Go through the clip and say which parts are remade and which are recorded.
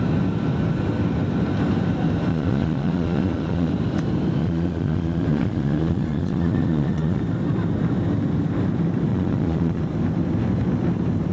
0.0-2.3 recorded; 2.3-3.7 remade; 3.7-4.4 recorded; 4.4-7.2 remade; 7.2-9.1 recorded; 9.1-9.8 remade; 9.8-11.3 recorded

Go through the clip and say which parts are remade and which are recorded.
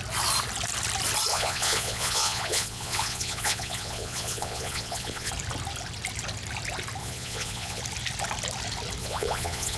0.0-1.3 recorded; 1.3-5.3 remade; 5.3-7.0 recorded; 7.0-7.8 remade; 7.8-9.0 recorded; 9.0-9.8 remade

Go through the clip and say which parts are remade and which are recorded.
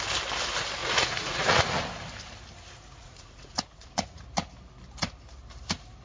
0.0-0.8 recorded; 0.8-1.8 remade; 1.8-3.0 recorded; 3.0-4.2 remade; 4.2-6.0 recorded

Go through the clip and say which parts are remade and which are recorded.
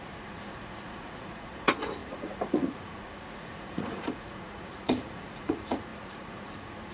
0.0-6.9 remade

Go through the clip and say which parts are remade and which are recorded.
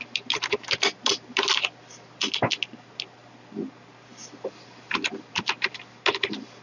0.0-6.6 recorded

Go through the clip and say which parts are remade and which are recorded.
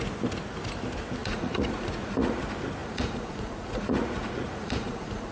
0.0-1.2 recorded; 1.2-2.4 remade; 2.4-2.8 recorded; 2.8-5.3 remade